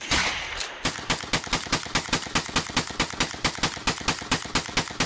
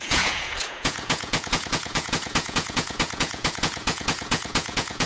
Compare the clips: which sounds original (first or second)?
first